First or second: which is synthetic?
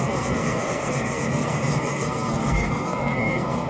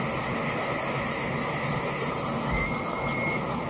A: first